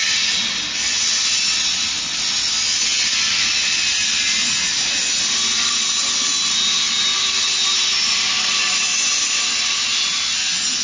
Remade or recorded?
recorded